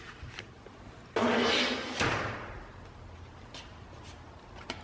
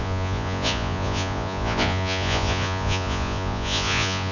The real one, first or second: first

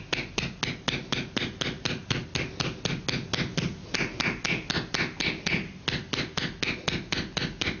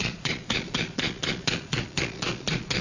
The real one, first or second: first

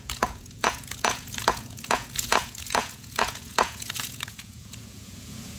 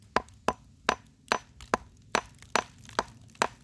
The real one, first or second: second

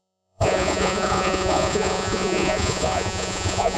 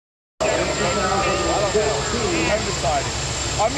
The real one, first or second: second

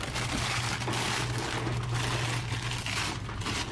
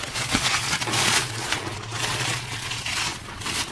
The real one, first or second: first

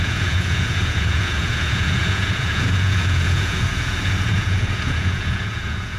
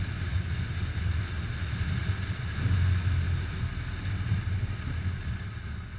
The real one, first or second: second